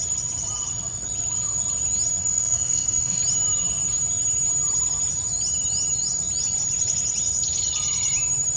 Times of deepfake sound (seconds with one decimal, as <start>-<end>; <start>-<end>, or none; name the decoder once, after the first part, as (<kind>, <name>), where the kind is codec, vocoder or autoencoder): 2.2-3.2 (codec, SNAC)